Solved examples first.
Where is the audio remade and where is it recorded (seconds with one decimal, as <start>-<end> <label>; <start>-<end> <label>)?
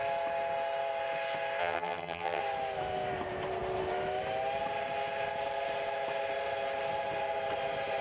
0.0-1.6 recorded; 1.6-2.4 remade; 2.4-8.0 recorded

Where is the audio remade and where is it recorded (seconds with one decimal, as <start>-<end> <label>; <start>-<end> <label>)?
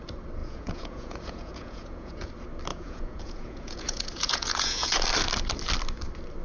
0.0-0.4 recorded; 0.4-2.3 remade; 2.3-2.7 recorded; 2.7-4.9 remade; 4.9-6.4 recorded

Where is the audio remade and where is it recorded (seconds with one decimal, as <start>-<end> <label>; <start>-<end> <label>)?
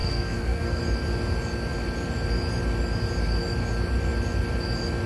0.0-0.8 remade; 0.8-5.1 recorded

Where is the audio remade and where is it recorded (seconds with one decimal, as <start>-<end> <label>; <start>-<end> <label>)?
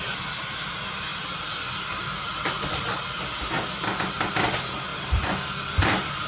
0.0-6.3 recorded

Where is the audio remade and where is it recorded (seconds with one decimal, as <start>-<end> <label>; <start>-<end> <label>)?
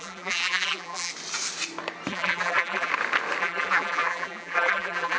0.0-1.1 remade; 1.1-2.1 recorded; 2.1-2.9 remade; 2.9-3.4 recorded; 3.4-5.2 remade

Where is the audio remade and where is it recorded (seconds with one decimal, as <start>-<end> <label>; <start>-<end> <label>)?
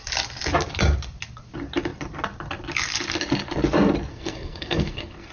0.0-4.1 recorded; 4.1-5.3 remade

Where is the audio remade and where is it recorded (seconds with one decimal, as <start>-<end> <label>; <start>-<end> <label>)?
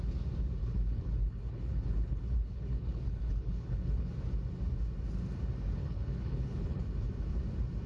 0.0-0.6 recorded; 0.6-4.1 remade; 4.1-5.8 recorded; 5.8-6.9 remade; 6.9-7.9 recorded